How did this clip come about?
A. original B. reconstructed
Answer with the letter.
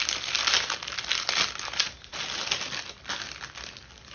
A